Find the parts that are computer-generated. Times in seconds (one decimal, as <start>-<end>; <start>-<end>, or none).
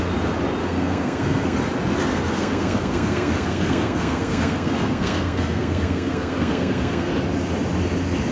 0.6-1.6; 2.1-7.1